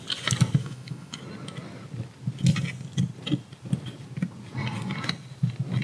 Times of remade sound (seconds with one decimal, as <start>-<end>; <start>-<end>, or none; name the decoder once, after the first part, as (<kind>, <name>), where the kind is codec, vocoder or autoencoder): 0.6-1.2 (autoencoder, DAC-VAE)

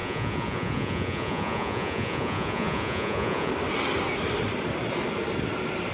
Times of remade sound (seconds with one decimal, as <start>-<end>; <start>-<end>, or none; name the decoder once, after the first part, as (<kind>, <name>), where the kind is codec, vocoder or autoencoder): 0.0-3.5 (vocoder, Vocos)